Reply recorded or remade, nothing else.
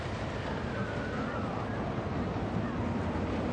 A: recorded